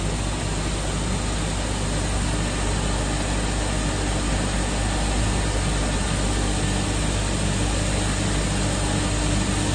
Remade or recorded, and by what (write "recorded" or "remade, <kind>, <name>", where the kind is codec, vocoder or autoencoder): recorded